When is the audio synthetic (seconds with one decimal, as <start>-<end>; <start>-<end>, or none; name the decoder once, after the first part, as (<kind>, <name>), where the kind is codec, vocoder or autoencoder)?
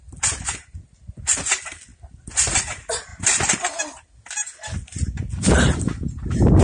none